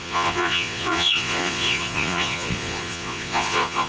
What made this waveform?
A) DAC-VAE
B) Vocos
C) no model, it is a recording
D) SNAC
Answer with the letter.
B